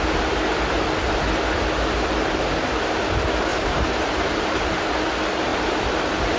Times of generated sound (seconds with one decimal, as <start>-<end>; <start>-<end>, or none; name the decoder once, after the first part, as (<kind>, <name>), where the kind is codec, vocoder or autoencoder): 3.5-4.9 (vocoder, BigVGAN v2); 5.5-6.4